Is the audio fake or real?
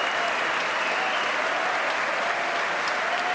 real